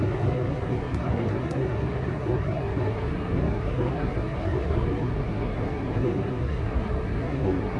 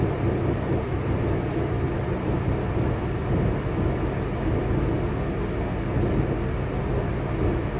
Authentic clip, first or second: second